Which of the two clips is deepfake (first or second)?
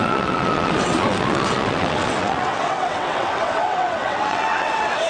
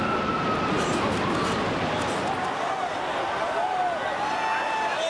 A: first